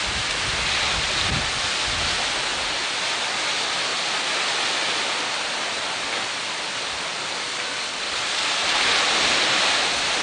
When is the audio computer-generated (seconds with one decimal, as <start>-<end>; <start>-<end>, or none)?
none